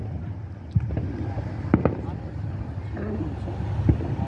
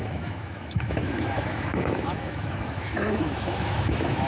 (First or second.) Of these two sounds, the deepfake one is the second